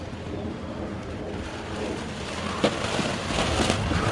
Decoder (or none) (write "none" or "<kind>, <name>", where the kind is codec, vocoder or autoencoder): none